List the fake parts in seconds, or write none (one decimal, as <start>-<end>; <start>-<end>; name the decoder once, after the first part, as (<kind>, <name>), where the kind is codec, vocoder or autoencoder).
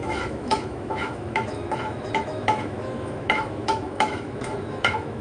0.0-5.2 (autoencoder, DAC-VAE)